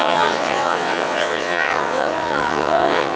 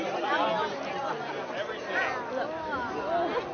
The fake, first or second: first